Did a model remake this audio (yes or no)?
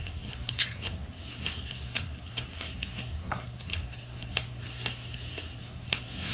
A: yes